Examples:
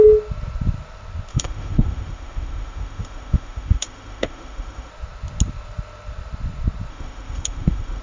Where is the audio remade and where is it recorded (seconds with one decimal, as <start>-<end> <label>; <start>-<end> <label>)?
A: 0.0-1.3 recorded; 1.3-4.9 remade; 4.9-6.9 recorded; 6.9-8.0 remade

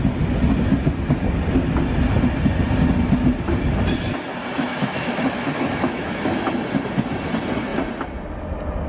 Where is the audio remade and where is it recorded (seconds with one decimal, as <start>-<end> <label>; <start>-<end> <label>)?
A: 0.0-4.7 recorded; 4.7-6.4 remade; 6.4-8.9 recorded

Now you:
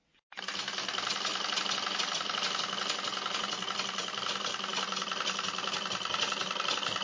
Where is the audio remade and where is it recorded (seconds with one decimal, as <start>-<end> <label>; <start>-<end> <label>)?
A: 0.0-7.0 recorded

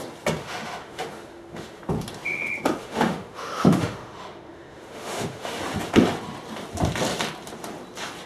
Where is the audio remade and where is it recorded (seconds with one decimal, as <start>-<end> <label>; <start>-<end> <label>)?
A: 0.0-0.4 recorded; 0.4-1.8 remade; 1.8-2.8 recorded; 2.8-5.6 remade; 5.6-8.3 recorded

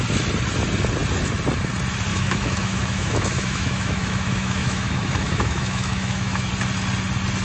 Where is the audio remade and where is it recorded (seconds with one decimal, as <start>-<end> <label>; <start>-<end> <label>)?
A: 0.0-2.1 recorded; 2.1-6.5 remade; 6.5-7.4 recorded